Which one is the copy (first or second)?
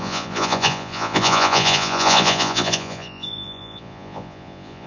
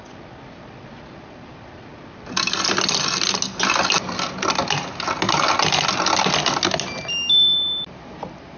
first